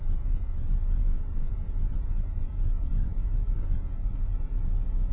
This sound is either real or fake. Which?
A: fake